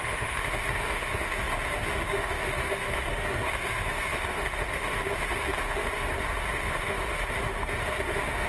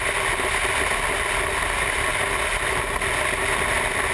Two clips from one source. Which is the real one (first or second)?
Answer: second